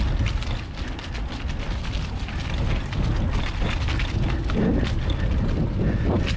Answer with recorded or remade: recorded